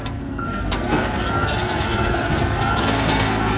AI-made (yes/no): yes